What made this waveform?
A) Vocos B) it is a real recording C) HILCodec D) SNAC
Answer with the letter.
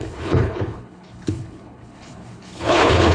C